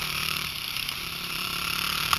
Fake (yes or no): yes